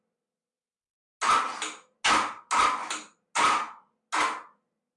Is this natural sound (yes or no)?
yes